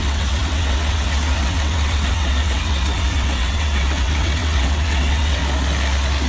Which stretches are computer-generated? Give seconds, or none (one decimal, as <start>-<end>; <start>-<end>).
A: 0.0-5.4